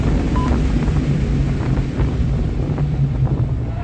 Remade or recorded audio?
remade